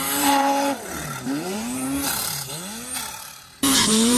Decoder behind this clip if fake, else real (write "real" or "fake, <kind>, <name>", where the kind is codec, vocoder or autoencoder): fake, vocoder, BigVGAN v2